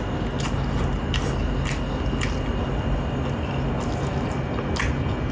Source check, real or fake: real